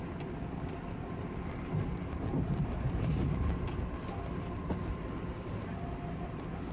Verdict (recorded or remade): recorded